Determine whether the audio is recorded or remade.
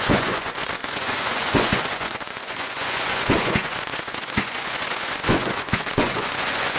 remade